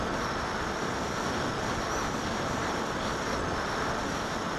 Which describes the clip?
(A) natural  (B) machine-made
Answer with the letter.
A